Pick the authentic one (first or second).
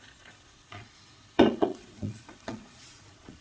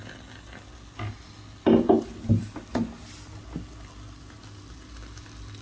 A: second